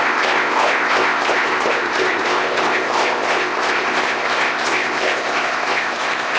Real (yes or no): no